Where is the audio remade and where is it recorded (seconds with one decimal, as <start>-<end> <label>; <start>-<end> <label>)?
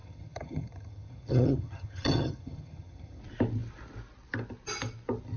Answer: 0.0-3.2 remade; 3.2-5.4 recorded